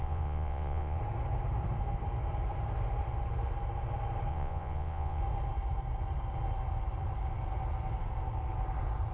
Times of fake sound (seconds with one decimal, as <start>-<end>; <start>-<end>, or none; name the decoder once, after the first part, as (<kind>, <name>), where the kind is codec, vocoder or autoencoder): 0.0-1.0 (vocoder, Vocos); 4.3-5.2